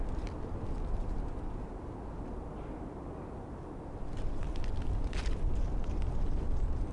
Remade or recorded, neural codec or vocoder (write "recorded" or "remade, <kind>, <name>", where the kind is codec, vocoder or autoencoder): recorded